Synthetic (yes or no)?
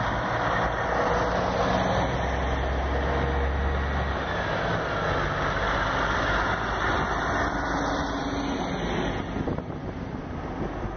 no